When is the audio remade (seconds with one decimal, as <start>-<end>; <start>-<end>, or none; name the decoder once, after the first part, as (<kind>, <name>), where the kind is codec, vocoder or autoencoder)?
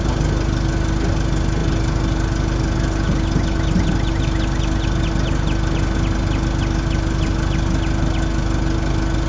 none